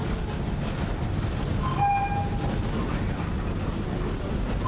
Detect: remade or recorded recorded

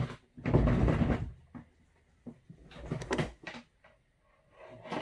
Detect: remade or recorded recorded